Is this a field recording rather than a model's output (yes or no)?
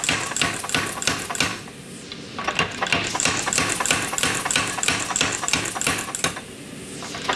yes